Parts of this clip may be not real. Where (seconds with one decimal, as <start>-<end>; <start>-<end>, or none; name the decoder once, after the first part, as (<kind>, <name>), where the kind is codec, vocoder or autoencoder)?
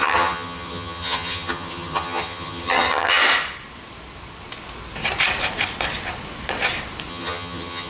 0.0-3.2 (vocoder, HiFi-GAN); 7.1-7.9